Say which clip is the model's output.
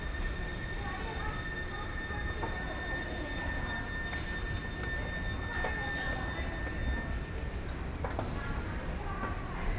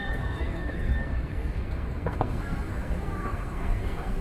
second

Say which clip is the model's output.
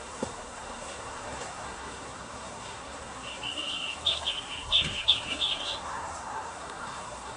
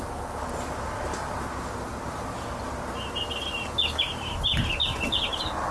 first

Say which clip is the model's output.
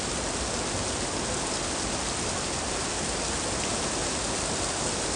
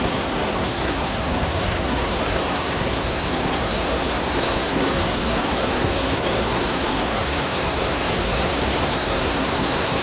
second